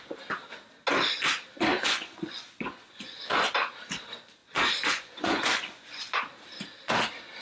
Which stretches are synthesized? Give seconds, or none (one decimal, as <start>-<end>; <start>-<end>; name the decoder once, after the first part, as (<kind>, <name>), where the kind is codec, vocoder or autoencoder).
1.7-3.5 (vocoder, Vocos); 4.4-6.2

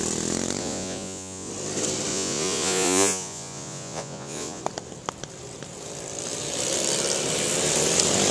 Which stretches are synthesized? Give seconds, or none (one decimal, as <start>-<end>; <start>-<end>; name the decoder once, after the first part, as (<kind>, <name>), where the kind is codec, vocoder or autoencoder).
0.6-1.5 (vocoder, Vocos); 2.1-4.6

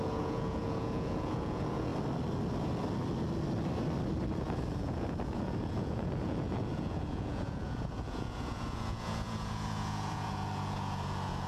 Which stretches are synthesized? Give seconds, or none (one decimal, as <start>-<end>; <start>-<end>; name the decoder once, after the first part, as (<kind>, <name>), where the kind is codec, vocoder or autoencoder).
0.0-1.9 (vocoder, Vocos); 4.3-11.5

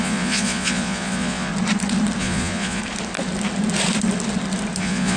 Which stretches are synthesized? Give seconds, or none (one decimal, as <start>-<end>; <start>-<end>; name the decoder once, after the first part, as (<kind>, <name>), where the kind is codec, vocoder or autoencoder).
0.0-1.5 (vocoder, Vocos); 2.2-2.8; 4.8-5.2

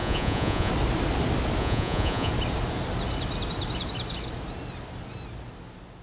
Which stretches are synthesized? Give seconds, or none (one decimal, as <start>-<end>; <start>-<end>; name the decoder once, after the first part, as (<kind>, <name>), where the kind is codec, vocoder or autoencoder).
0.0-0.7 (vocoder, Vocos); 1.6-2.3

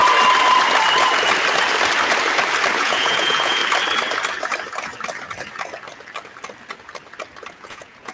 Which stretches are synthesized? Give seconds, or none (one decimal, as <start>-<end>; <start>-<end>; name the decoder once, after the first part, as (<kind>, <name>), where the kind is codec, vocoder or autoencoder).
2.8-3.6 (vocoder, Vocos); 7.5-8.1

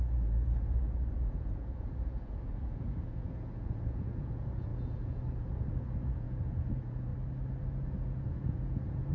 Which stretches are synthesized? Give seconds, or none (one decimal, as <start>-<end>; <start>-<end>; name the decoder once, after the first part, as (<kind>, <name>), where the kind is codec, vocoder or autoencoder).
0.0-7.1 (vocoder, Vocos); 7.6-9.1